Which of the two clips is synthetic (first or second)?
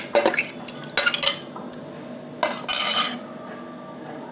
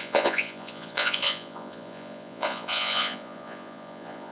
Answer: second